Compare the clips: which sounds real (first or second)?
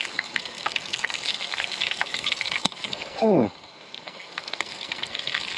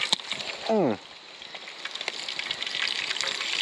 second